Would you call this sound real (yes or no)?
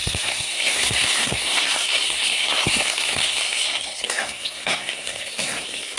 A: no